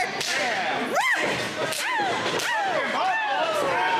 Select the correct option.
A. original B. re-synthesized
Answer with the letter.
A